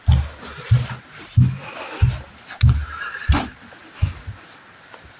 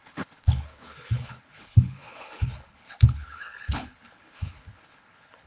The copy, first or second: second